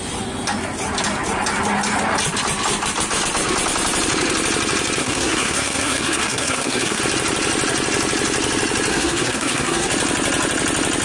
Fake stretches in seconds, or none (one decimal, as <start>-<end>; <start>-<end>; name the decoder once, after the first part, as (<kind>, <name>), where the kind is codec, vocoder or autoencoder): 5.0-7.0 (codec, SNAC); 8.9-9.9

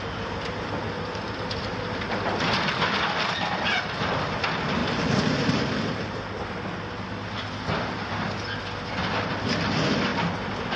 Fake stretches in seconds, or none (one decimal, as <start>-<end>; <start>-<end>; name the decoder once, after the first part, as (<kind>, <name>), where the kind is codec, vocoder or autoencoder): 4.8-6.6 (vocoder, BigVGAN v2)

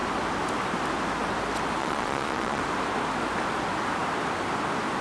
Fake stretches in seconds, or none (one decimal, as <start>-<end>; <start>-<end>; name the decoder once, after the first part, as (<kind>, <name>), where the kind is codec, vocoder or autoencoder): 1.8-2.6 (vocoder, Vocos)